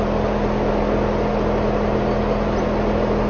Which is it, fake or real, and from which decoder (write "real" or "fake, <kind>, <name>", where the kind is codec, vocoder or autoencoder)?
real